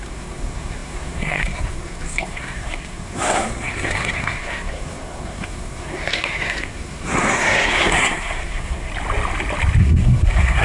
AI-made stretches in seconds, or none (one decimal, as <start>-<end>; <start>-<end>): 0.0-8.9; 9.8-10.6